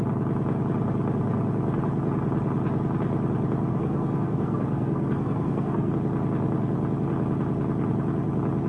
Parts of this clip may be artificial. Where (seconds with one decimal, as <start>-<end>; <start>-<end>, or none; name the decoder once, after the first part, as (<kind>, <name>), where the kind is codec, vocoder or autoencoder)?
3.7-5.9 (codec, SNAC)